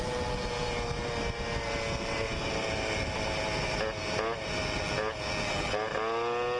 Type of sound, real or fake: real